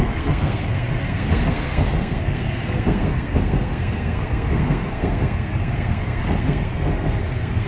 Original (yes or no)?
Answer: no